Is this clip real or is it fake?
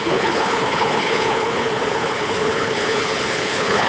fake